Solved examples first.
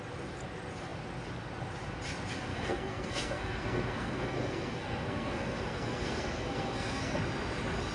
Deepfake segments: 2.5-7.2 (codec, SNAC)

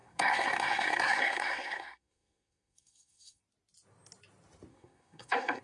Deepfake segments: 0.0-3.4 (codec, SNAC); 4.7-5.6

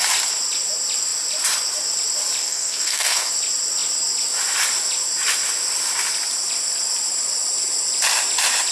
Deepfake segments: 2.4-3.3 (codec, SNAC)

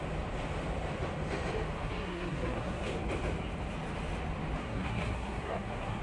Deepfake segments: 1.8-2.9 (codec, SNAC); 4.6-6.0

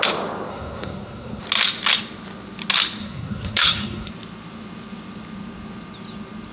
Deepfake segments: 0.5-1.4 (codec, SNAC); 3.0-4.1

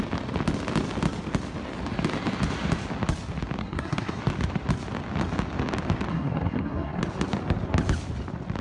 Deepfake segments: 3.6-4.2 (codec, SNAC); 6.1-7.0